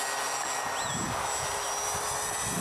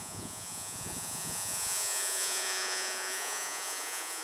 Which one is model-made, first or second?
second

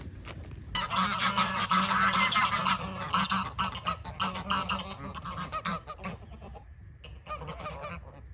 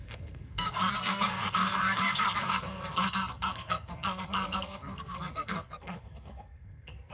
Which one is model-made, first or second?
second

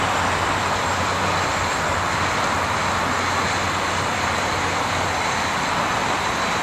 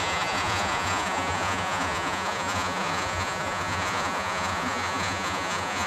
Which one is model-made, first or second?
second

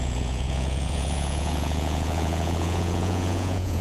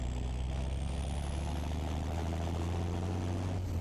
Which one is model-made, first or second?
first